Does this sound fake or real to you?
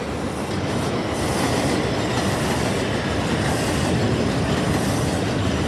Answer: real